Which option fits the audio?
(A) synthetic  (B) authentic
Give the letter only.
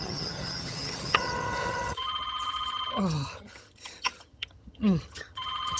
A